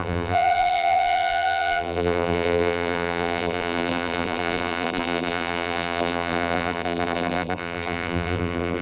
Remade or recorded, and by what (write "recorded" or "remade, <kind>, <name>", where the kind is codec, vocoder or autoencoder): remade, vocoder, BigVGAN v2